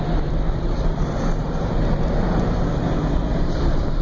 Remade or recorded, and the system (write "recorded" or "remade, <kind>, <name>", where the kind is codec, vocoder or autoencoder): remade, vocoder, BigVGAN v2